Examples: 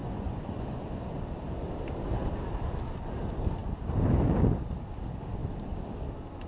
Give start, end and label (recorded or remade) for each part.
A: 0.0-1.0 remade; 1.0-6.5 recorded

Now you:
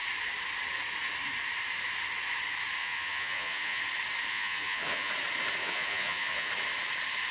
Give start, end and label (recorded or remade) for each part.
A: 0.0-2.8 recorded; 2.8-3.8 remade; 3.8-4.3 recorded; 4.3-5.1 remade; 5.1-5.6 recorded; 5.6-6.5 remade; 6.5-7.3 recorded

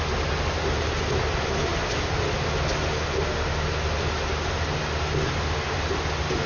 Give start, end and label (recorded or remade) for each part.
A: 0.0-6.5 recorded